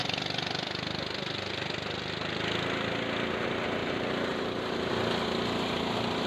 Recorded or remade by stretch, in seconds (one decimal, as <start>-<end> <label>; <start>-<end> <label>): 0.0-3.8 recorded; 3.8-4.9 remade; 4.9-6.3 recorded